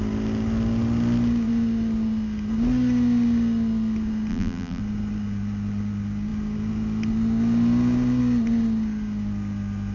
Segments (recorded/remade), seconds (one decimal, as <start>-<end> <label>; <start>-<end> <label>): 0.0-4.3 recorded; 4.3-4.8 remade; 4.8-9.9 recorded